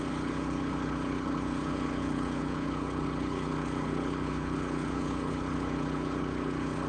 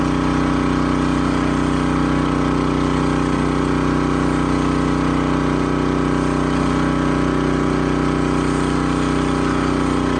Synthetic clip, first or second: first